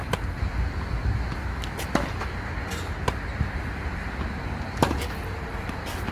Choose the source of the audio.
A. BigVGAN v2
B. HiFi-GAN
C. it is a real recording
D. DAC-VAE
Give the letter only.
C